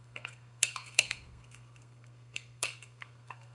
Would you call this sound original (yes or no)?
no